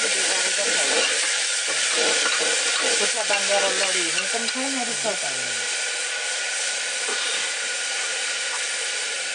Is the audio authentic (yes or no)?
yes